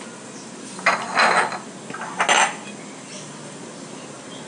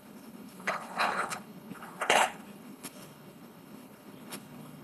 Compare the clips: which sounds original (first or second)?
first